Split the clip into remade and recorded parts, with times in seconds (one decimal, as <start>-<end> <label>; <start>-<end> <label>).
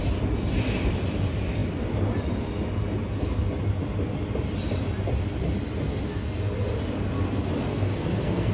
0.0-7.7 recorded; 7.7-8.5 remade